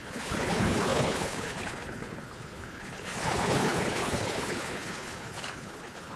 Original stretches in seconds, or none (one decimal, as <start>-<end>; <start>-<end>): none